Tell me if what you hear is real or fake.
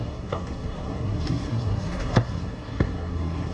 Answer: fake